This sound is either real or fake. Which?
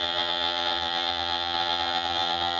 fake